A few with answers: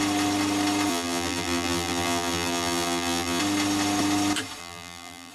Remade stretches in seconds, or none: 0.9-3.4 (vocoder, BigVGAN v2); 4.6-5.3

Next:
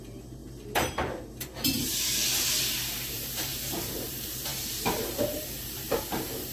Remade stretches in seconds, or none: 0.0-6.5 (vocoder, BigVGAN v2)